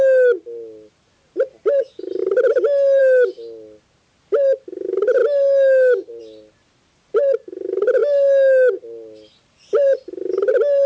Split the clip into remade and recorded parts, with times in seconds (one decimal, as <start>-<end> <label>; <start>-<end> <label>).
0.0-10.9 recorded